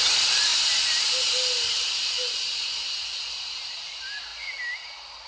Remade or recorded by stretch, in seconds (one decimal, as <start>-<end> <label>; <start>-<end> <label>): 0.0-5.3 recorded

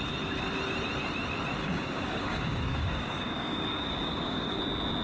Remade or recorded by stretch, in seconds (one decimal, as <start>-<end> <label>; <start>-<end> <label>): 0.0-1.6 recorded; 1.6-4.6 remade; 4.6-5.0 recorded

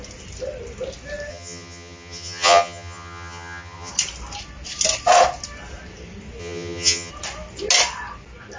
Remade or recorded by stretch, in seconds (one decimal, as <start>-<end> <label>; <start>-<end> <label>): 0.0-1.3 recorded; 1.3-3.9 remade; 3.9-6.4 recorded; 6.4-7.1 remade; 7.1-8.6 recorded